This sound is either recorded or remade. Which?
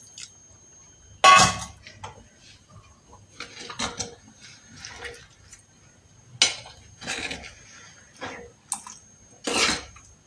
recorded